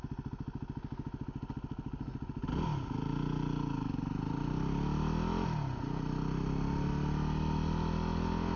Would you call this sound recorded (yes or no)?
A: yes